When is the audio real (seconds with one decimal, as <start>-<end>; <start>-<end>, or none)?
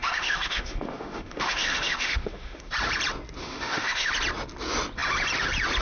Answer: 2.7-3.4; 4.1-5.8